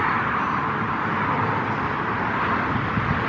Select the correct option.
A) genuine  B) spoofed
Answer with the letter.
A